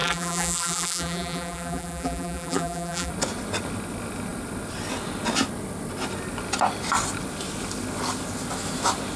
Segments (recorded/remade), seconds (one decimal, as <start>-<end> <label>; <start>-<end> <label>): 0.0-3.1 remade; 3.1-9.2 recorded